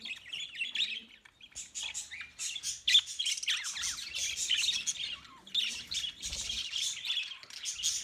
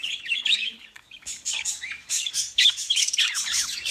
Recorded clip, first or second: first